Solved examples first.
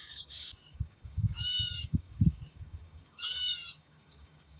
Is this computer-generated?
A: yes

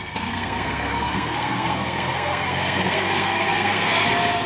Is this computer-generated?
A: yes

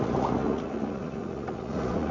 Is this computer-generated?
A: yes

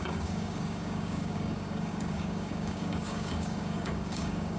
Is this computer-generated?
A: yes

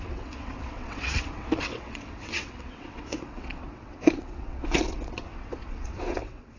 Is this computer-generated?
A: yes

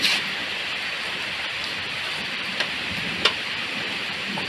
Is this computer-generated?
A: yes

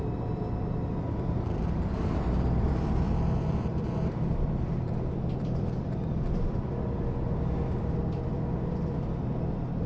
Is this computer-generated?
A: yes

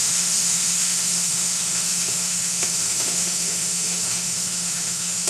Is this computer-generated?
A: yes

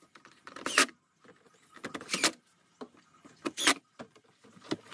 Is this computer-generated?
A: no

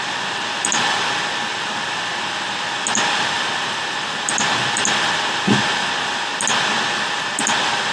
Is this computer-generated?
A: no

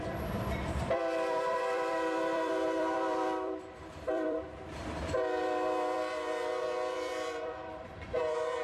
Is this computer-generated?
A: yes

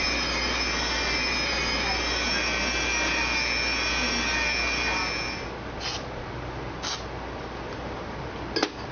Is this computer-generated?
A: no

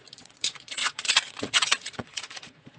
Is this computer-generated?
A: yes